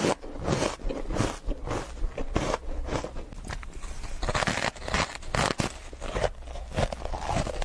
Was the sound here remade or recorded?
recorded